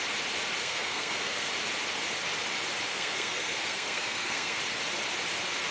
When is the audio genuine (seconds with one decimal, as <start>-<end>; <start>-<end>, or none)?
0.0-0.6; 1.5-2.9; 4.6-5.7